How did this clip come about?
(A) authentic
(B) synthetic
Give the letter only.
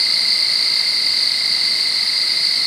A